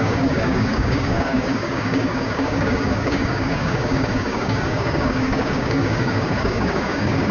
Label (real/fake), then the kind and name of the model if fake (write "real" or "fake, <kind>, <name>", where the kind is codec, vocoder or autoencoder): fake, codec, DAC